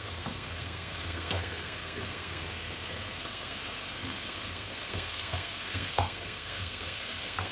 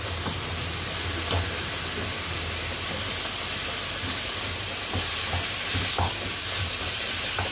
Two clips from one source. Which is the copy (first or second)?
first